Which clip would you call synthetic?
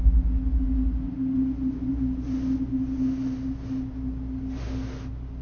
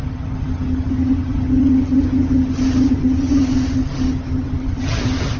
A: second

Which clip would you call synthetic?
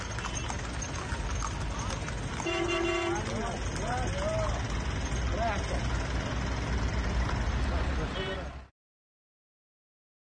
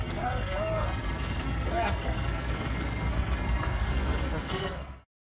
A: second